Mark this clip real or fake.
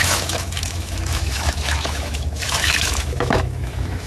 fake